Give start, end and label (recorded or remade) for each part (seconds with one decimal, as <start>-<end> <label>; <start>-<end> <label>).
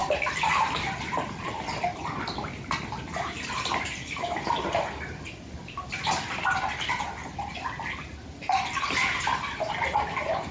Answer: 0.0-10.5 recorded